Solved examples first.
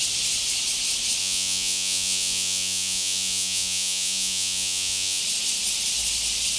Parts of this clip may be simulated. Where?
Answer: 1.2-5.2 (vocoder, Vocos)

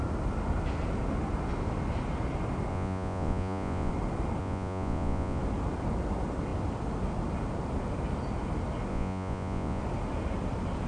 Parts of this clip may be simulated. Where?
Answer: 2.7-3.9 (vocoder, Vocos); 4.4-5.4; 8.9-9.8